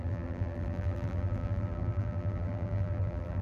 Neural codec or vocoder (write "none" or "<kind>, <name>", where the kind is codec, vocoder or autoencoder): vocoder, BigVGAN v2